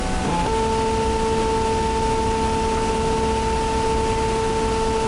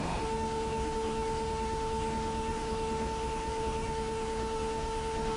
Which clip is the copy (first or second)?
second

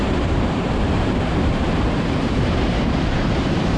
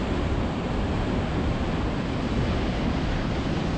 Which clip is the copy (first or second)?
first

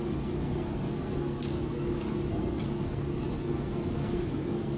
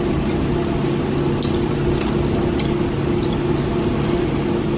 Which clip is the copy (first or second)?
first